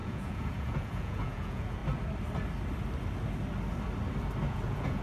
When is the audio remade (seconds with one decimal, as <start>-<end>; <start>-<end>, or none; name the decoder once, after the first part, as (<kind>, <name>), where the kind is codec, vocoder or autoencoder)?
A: 0.0-1.8 (vocoder, Vocos); 4.5-5.0